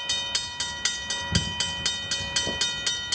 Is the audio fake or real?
real